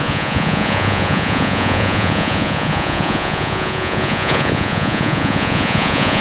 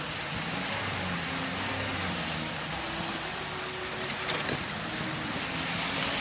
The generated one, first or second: first